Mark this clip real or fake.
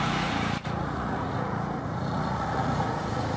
fake